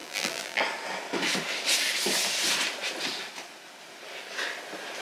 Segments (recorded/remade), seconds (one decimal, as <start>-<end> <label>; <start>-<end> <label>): 0.0-0.6 remade; 0.6-5.0 recorded